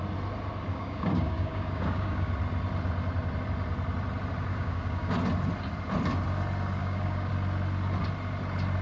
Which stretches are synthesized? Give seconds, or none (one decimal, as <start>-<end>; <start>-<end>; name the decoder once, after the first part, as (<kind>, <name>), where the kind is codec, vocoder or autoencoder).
0.7-2.3 (codec, DAC); 4.5-5.1; 6.8-7.3